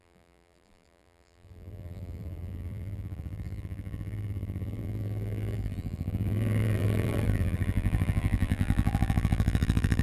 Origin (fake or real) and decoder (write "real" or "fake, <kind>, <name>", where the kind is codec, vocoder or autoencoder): fake, vocoder, BigVGAN v2